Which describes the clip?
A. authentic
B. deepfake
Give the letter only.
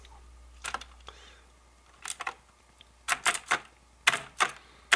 A